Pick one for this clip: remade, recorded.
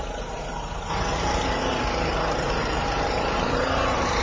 remade